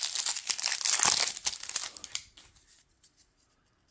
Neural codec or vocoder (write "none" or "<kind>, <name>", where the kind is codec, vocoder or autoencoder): none